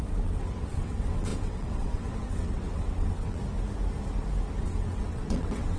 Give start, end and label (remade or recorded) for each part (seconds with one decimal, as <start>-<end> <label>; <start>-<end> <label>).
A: 0.0-3.4 remade; 3.4-4.6 recorded; 4.6-5.8 remade